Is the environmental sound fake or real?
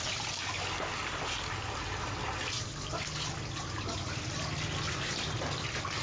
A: real